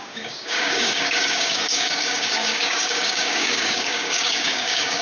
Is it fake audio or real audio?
fake